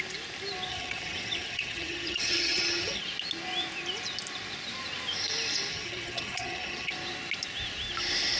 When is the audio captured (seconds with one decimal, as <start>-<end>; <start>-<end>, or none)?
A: 0.0-0.7; 3.0-5.7; 6.9-8.4

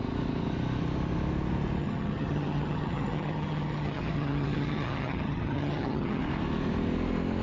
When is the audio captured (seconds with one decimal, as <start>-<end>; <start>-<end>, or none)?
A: 0.0-1.8; 6.2-7.4

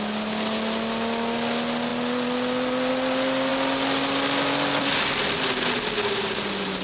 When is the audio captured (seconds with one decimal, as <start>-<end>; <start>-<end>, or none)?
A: 0.0-6.8

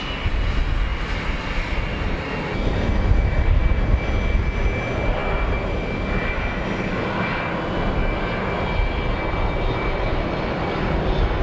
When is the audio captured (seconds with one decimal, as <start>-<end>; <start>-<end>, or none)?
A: 0.0-11.4

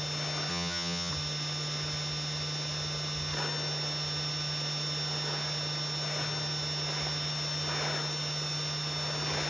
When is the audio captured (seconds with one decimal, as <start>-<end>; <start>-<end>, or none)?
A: 0.0-0.5; 1.1-9.5

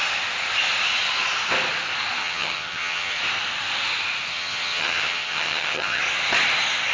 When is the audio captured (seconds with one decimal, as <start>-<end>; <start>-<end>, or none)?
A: 0.0-2.2; 3.2-4.3; 6.0-6.9

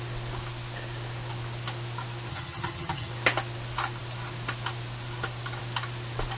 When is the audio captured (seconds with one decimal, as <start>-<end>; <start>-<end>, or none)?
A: 0.0-2.3; 3.1-6.4